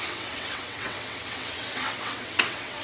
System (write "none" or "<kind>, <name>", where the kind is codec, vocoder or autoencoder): vocoder, WaveNeXt